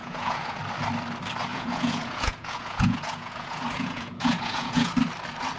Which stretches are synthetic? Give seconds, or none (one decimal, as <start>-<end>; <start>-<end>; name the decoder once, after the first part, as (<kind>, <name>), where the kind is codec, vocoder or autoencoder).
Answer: 0.0-0.6 (vocoder, Vocos); 1.5-4.9